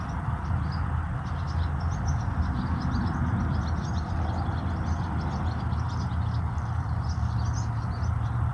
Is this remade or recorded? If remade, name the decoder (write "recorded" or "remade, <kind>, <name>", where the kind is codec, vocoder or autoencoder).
recorded